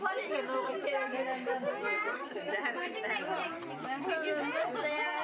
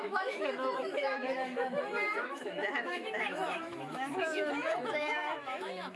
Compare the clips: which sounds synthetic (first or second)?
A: second